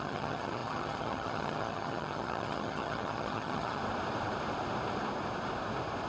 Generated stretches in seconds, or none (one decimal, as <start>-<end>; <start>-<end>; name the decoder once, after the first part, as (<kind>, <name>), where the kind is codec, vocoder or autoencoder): 0.0-3.8 (vocoder, HiFi-GAN)